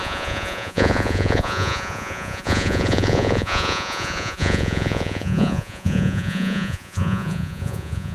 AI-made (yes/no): yes